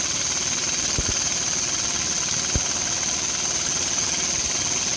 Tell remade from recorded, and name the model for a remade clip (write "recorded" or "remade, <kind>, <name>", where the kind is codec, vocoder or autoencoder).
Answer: recorded